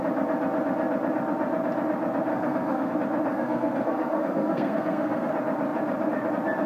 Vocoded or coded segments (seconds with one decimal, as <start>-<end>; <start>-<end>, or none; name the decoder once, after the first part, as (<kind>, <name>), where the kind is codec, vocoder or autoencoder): 2.3-2.9 (codec, SNAC); 3.3-5.3